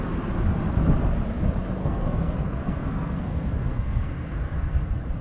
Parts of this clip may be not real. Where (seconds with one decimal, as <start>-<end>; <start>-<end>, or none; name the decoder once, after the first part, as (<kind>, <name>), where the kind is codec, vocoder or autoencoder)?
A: 1.8-5.2 (codec, SNAC)